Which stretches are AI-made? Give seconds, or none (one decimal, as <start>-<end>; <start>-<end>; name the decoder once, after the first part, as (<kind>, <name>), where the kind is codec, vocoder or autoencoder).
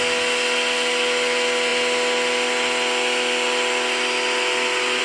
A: none